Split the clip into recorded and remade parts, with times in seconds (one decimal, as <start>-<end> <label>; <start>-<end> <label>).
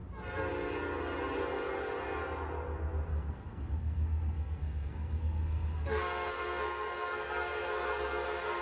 0.0-3.1 recorded; 3.1-8.6 remade